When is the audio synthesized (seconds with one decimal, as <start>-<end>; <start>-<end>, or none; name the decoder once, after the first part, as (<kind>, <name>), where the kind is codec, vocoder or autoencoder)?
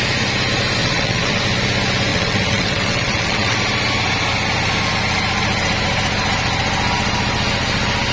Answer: 0.8-1.4 (vocoder, WaveNeXt); 2.1-3.6